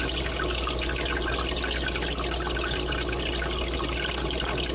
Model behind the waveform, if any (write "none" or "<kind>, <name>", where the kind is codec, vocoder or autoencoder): none